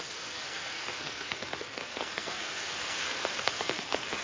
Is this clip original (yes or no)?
no